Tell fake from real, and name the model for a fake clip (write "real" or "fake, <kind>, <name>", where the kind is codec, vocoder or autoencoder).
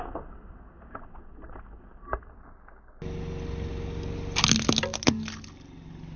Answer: real